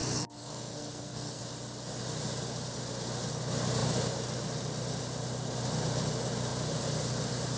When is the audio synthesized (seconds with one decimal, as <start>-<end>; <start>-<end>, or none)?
0.0-1.4